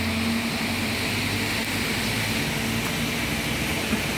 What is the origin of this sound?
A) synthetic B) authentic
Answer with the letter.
B